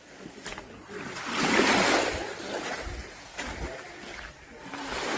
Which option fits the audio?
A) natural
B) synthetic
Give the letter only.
A